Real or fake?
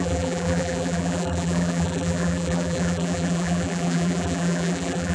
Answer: fake